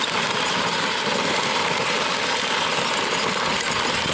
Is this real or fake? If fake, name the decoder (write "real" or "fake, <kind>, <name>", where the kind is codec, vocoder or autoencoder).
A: real